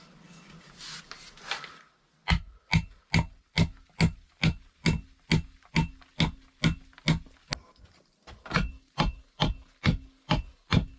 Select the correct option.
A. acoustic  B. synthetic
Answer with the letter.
A